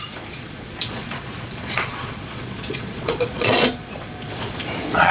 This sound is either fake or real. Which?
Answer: fake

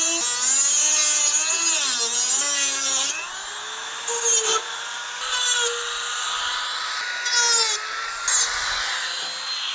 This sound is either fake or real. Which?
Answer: real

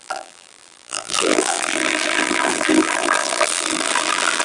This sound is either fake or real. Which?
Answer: fake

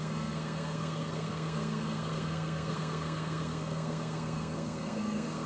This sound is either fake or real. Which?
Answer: fake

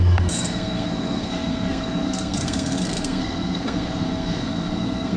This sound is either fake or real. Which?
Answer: fake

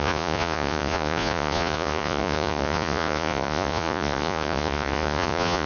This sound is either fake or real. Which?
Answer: fake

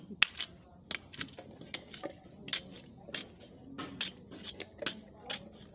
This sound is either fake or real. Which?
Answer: real